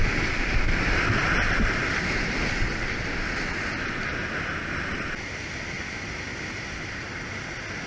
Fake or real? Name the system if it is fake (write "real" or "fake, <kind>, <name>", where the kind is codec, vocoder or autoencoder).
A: real